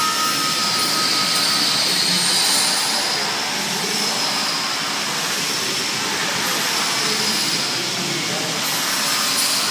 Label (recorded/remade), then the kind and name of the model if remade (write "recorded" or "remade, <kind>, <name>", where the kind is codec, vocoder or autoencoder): recorded